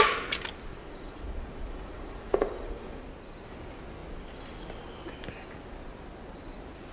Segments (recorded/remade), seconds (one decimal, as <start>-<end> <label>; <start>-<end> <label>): 0.0-0.7 recorded; 0.7-3.0 remade; 3.0-6.9 recorded